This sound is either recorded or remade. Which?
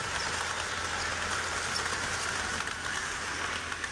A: recorded